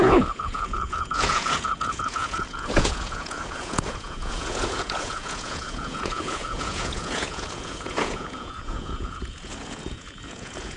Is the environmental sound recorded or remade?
remade